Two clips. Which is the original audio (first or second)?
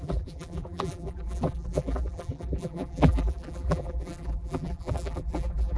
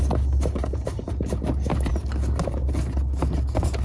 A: second